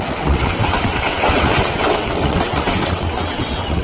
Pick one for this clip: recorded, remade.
remade